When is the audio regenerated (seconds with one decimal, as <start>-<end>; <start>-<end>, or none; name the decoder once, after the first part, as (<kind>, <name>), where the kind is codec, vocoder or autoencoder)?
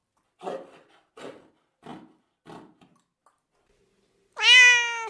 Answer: none